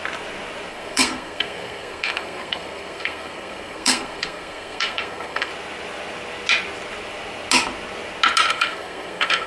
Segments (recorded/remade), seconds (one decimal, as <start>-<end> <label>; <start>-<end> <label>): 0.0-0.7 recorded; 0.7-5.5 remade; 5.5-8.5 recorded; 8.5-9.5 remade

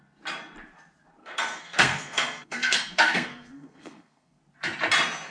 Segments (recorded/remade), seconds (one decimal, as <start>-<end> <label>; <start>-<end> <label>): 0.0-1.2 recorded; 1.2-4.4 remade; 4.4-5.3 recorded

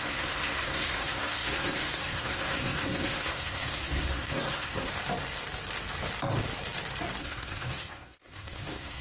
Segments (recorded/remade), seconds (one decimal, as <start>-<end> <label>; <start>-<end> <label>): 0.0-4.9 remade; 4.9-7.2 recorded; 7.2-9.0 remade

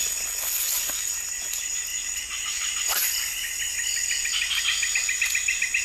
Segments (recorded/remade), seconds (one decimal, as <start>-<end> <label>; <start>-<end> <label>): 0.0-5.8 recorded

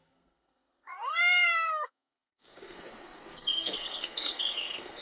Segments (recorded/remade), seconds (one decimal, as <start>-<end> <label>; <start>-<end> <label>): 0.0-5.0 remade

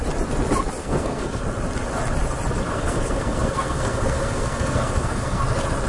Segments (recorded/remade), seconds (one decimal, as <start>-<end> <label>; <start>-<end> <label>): 0.0-0.8 recorded; 0.8-1.4 remade; 1.4-2.7 recorded; 2.7-5.4 remade; 5.4-5.9 recorded

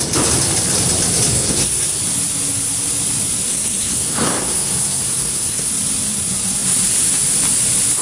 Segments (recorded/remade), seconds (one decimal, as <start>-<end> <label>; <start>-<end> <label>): 0.0-1.3 recorded; 1.3-2.0 remade; 2.0-3.5 recorded; 3.5-5.7 remade; 5.7-8.0 recorded